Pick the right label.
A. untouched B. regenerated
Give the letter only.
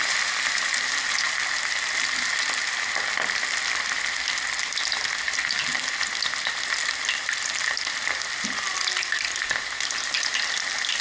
A